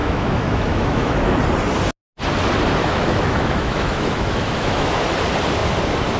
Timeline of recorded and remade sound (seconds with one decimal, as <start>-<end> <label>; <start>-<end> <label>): 0.0-1.4 remade; 1.4-2.8 recorded; 2.8-4.9 remade; 4.9-6.2 recorded